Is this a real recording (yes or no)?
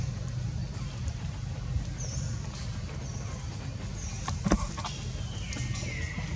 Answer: yes